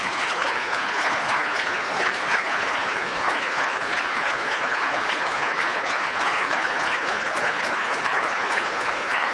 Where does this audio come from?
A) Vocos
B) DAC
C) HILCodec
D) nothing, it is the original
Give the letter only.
C